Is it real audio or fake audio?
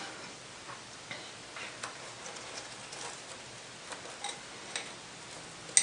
real